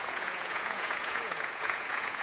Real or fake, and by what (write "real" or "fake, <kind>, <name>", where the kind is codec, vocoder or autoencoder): fake, vocoder, Vocos